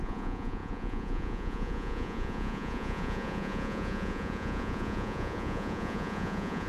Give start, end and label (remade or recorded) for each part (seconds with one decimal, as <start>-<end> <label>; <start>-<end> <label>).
0.0-6.7 remade